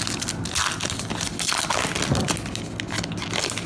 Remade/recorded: recorded